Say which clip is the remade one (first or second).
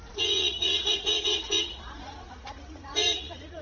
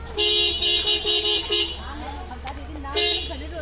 first